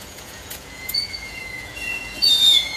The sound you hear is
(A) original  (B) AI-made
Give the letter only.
B